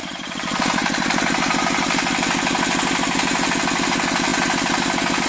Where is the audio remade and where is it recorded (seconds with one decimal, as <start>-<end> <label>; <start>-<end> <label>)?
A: 0.0-0.6 remade; 0.6-5.3 recorded